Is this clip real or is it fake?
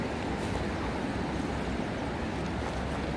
real